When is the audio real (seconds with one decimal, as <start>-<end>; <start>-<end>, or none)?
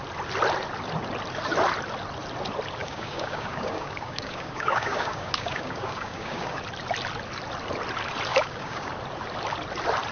0.0-2.8; 6.6-8.3; 8.9-10.1